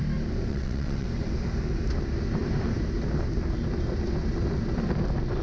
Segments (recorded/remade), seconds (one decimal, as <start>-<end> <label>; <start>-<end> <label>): 0.0-0.5 recorded; 0.5-1.1 remade; 1.1-5.4 recorded